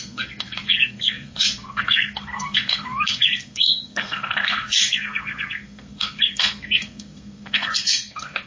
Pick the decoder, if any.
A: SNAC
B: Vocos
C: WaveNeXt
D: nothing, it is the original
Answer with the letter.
A